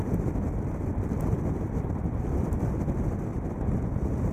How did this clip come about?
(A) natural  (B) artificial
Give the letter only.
B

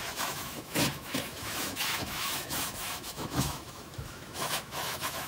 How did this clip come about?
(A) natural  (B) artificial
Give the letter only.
B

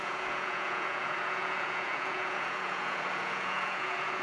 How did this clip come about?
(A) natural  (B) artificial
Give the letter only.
B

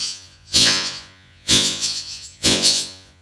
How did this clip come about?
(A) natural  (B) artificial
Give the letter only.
B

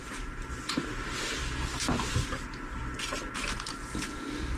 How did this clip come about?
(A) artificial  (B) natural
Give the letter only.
A